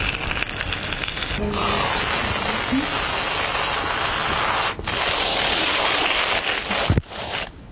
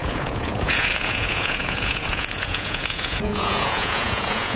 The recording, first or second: first